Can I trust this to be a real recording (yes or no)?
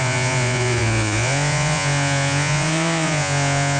no